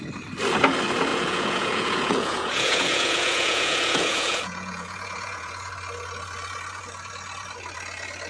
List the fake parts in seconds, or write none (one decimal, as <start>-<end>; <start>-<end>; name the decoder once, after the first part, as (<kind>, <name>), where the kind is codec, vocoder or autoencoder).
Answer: 1.1-5.7 (vocoder, Vocos)